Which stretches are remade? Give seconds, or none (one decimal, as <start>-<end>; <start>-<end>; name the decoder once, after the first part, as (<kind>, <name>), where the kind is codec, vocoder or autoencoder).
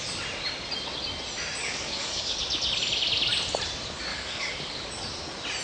1.6-2.4 (codec, DAC); 4.1-4.9